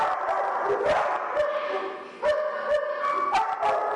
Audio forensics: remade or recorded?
recorded